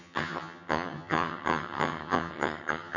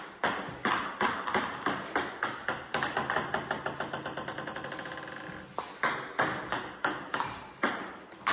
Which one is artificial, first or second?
first